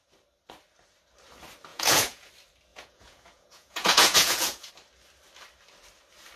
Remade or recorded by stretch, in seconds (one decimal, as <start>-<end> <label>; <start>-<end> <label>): 0.0-1.7 recorded; 1.7-2.3 remade; 2.3-2.7 recorded; 2.7-4.7 remade; 4.7-6.4 recorded